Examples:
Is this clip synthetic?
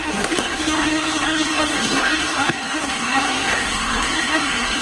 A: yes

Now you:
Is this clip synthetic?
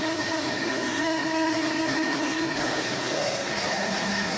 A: yes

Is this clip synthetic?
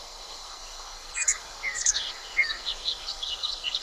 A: yes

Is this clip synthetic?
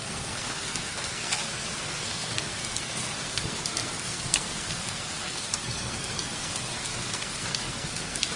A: yes